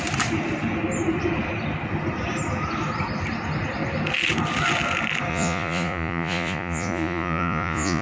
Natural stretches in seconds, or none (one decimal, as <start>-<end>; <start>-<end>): 0.0-5.3

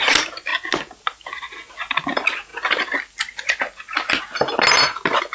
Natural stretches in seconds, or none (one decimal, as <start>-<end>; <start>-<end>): 0.0-5.3

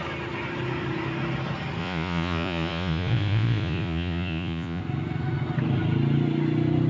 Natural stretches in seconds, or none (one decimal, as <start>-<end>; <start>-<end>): 0.0-1.8; 4.8-6.9

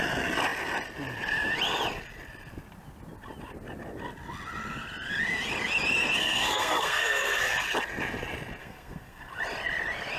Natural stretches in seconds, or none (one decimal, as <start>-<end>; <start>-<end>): 0.0-6.2; 7.4-8.6; 9.3-10.2

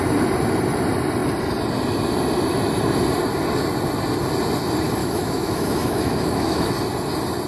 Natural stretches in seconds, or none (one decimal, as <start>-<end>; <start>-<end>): 0.0-5.0; 6.7-7.5

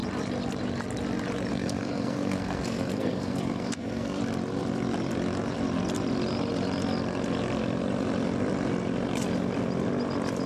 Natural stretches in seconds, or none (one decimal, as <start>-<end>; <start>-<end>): 0.0-1.5; 4.2-10.5